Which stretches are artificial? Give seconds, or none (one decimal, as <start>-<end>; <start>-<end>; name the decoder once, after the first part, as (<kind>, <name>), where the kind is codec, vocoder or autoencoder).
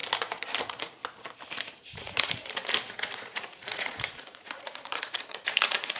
0.6-1.0 (vocoder, Vocos); 2.0-2.4; 3.1-6.0